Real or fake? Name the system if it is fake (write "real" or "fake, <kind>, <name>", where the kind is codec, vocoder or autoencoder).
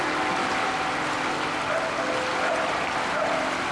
real